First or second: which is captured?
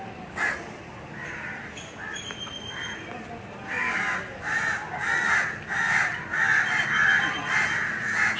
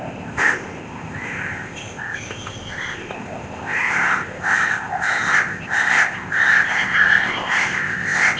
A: first